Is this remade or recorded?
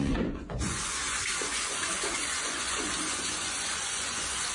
remade